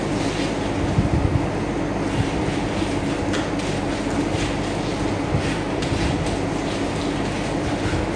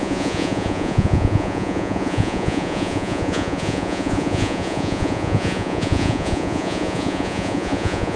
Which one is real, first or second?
first